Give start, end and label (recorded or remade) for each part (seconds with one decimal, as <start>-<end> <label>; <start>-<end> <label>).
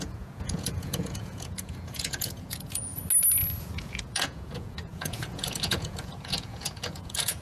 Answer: 0.0-3.0 remade; 3.0-3.6 recorded; 3.6-7.4 remade